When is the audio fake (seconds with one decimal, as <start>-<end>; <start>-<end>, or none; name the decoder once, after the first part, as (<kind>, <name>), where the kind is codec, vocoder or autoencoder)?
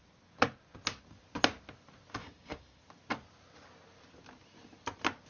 2.2-2.8 (codec, DAC)